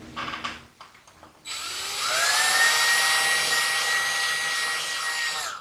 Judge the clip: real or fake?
real